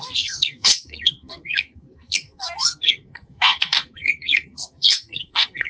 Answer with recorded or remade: remade